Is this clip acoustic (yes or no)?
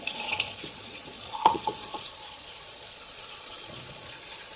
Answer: no